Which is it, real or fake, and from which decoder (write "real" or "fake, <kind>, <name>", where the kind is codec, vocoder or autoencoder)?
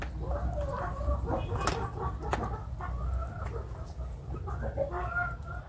real